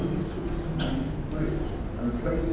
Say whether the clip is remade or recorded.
recorded